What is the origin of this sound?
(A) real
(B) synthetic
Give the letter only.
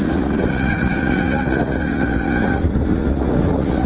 B